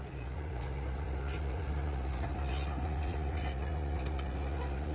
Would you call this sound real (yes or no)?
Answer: no